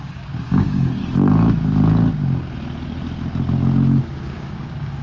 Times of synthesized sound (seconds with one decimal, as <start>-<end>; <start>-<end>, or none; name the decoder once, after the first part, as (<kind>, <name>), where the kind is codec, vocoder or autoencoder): 0.0-1.0 (codec, DAC); 4.0-5.0

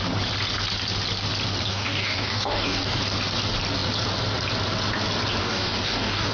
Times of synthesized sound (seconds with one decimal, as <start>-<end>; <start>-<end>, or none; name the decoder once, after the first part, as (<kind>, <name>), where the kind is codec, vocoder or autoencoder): 1.7-3.0 (codec, DAC); 5.4-6.3

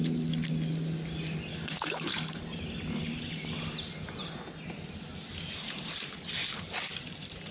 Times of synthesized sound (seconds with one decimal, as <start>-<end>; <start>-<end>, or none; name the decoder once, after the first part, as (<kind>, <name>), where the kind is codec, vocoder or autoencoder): 1.5-2.4 (codec, DAC)